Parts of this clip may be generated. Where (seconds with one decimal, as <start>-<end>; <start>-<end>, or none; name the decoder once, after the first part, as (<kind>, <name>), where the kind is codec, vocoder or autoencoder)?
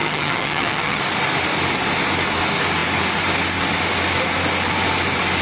0.0-1.0 (vocoder, HiFi-GAN)